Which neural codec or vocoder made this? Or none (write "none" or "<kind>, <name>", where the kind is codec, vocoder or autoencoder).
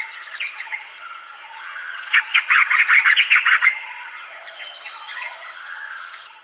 vocoder, HiFi-GAN